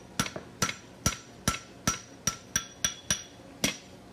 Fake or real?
real